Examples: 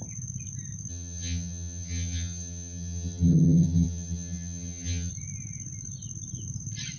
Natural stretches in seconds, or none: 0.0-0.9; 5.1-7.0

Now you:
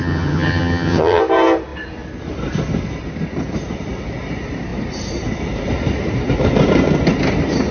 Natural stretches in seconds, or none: 1.2-7.7

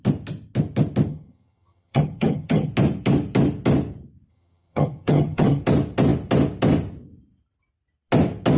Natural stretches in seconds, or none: 0.0-1.1; 2.7-4.3; 5.6-8.6